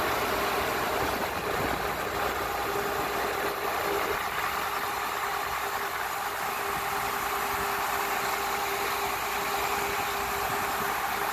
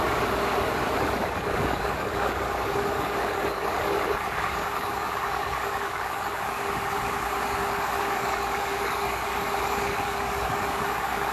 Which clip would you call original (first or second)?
first